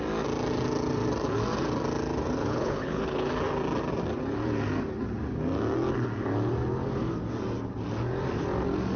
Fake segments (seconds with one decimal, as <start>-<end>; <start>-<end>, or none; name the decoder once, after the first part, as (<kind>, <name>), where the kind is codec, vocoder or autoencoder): 2.4-3.3 (codec, HILCodec)

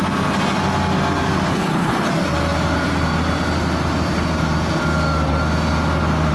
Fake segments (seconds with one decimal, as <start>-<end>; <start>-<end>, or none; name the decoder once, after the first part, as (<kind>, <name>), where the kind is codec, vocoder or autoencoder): 1.5-2.1 (codec, HILCodec)

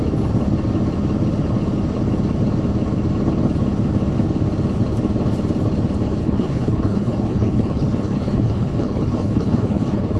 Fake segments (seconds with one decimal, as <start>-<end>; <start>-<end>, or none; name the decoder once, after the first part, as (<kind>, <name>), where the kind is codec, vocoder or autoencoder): 6.2-10.2 (codec, HILCodec)

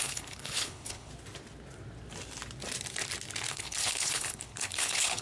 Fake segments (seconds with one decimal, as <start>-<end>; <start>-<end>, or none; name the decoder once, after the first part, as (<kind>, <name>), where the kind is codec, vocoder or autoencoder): 0.0-1.1 (codec, HILCodec); 3.5-5.2

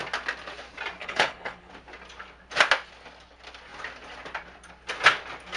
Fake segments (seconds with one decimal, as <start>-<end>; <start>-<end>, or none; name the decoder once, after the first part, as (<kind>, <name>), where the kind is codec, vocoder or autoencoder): 1.0-1.7 (codec, HILCodec)

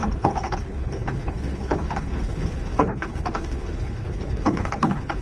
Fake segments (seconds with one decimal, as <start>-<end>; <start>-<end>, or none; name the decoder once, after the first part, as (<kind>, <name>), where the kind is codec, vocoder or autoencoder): 0.0-5.2 (codec, HILCodec)

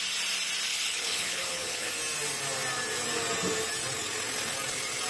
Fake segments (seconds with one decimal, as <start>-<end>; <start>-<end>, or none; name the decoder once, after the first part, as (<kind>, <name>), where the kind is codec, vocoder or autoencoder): 0.7-1.9 (codec, HILCodec)

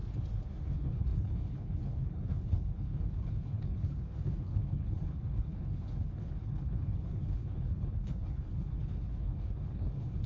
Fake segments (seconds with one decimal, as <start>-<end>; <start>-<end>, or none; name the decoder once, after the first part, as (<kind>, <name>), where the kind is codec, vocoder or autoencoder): 0.7-10.3 (codec, HILCodec)